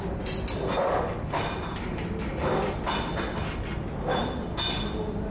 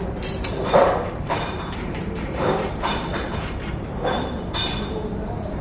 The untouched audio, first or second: first